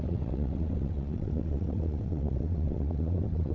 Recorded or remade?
remade